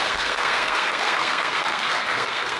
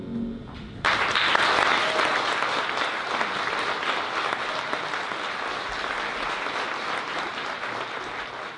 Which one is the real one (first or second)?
second